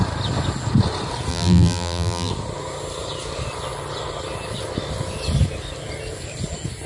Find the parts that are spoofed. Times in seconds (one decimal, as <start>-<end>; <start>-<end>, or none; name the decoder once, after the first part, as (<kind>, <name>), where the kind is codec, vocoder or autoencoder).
1.3-2.3 (vocoder, BigVGAN v2)